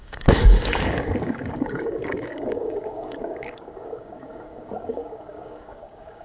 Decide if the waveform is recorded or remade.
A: remade